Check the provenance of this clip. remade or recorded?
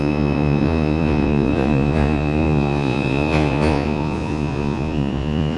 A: remade